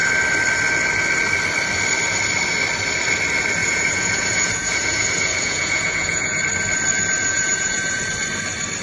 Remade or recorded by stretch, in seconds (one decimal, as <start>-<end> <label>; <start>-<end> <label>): 0.0-3.6 recorded; 3.6-6.4 remade; 6.4-7.2 recorded; 7.2-8.1 remade; 8.1-8.8 recorded